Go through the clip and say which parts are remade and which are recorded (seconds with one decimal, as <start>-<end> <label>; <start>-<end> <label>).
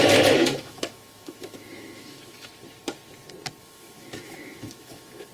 0.0-0.4 recorded; 0.4-2.5 remade; 2.5-3.6 recorded; 3.6-5.3 remade